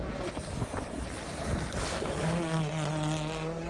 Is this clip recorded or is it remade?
recorded